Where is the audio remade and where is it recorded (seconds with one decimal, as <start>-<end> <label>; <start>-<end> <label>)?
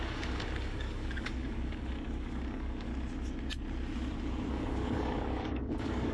0.0-2.9 remade; 2.9-4.5 recorded; 4.5-6.1 remade